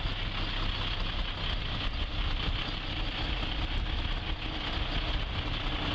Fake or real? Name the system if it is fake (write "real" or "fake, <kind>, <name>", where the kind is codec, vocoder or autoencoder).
real